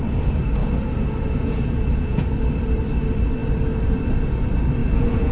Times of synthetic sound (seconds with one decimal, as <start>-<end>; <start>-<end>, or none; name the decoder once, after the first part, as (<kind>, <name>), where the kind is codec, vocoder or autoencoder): 0.6-2.3 (vocoder, Vocos); 4.8-5.3